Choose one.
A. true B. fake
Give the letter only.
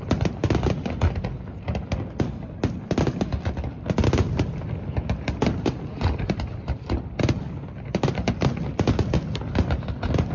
A